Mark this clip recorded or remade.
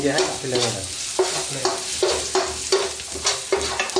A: recorded